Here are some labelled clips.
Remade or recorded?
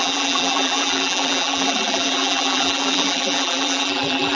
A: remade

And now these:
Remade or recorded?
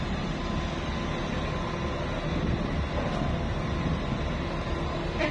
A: recorded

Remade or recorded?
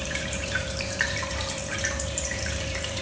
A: remade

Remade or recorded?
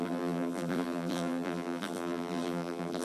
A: remade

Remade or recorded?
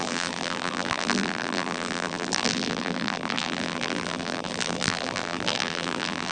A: remade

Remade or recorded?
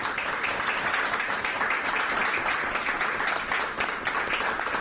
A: recorded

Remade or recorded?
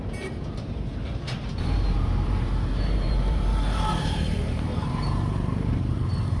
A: remade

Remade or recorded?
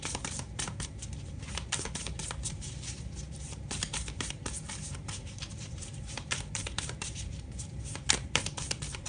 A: remade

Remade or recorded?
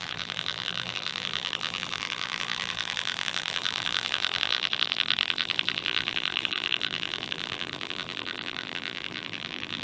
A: remade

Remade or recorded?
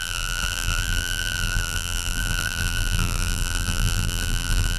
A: remade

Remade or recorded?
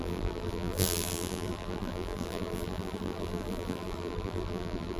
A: remade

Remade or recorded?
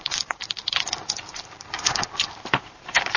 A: remade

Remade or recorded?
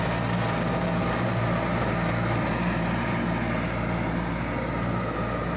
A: recorded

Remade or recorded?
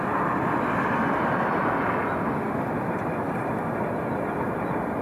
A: recorded